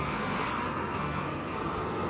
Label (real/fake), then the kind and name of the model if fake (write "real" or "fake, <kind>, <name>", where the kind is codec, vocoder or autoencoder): fake, codec, SNAC